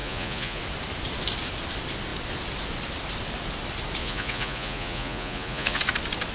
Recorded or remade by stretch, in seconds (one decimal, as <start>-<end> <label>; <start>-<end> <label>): 0.0-0.6 remade; 0.6-4.0 recorded; 4.0-5.8 remade; 5.8-6.3 recorded